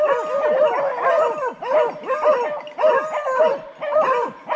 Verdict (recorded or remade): recorded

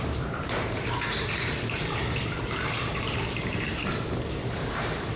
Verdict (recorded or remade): remade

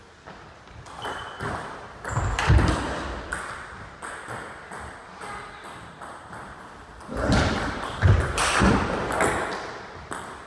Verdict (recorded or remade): recorded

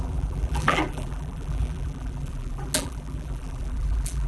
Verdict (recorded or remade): remade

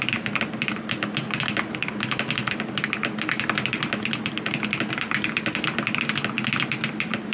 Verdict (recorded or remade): remade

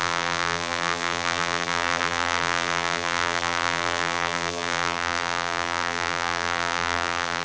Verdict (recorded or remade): remade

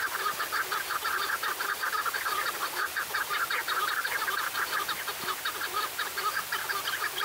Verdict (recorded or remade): recorded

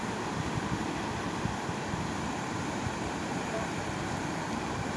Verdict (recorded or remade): remade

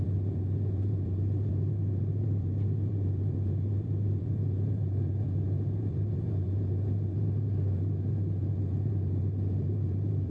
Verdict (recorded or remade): remade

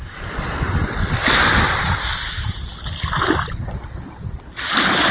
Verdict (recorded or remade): recorded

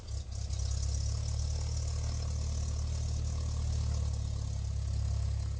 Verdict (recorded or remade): recorded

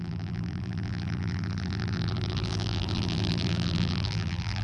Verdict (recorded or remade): remade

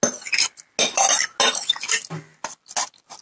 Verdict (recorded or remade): recorded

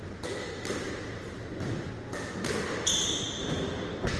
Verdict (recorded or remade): recorded